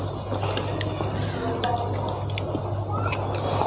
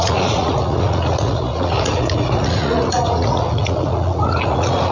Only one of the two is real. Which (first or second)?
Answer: first